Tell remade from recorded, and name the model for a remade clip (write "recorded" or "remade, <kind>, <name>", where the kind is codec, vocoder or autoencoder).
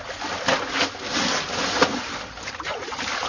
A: recorded